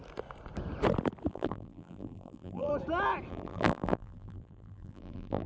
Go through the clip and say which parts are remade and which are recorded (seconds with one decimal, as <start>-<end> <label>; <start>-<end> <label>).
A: 0.0-1.3 recorded; 1.3-2.7 remade; 2.7-3.3 recorded; 3.3-5.5 remade